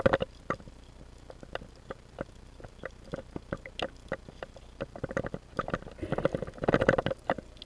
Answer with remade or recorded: recorded